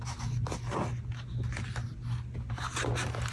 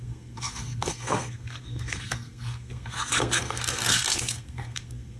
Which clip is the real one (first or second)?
first